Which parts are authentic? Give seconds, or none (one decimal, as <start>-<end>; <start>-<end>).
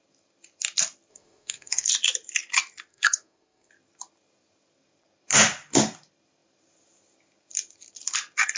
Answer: 0.0-1.1; 1.9-2.9; 3.7-8.6